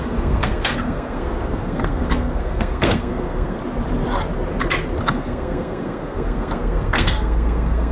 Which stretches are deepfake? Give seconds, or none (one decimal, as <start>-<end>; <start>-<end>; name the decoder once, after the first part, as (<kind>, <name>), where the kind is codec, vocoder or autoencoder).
0.0-3.6 (codec, SNAC); 5.0-7.9